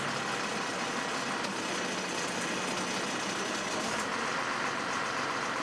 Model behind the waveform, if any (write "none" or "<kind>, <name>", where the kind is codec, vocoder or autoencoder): none